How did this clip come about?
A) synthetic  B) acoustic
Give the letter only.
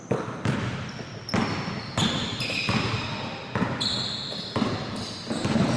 B